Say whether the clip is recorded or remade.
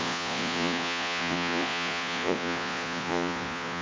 remade